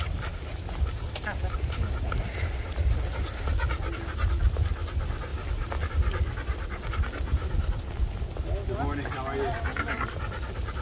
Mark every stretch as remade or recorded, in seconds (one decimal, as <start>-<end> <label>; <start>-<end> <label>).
0.0-10.8 recorded